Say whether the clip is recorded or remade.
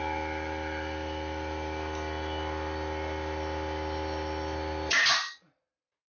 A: recorded